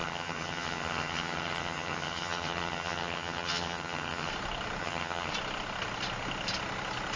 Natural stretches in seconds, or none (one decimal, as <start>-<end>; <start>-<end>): 4.3-4.8; 5.3-7.2